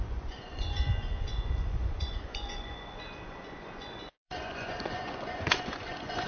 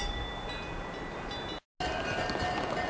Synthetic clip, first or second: first